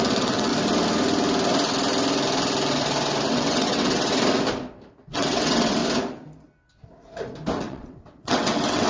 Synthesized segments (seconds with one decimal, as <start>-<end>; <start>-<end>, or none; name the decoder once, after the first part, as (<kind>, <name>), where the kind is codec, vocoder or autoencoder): 0.0-0.5 (vocoder, WaveNeXt); 3.3-4.1; 5.1-5.8; 7.6-8.9